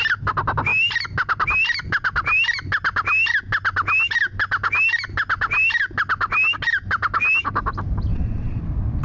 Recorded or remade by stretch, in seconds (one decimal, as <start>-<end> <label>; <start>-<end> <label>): 0.0-8.1 recorded; 8.1-8.6 remade; 8.6-9.0 recorded